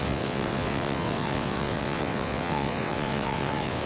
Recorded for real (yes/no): no